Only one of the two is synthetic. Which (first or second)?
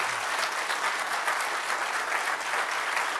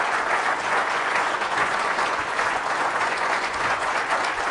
second